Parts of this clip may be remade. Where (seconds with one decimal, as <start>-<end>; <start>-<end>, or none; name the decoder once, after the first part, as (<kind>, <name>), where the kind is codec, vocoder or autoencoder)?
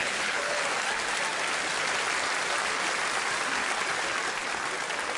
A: 0.0-0.6 (codec, HILCodec)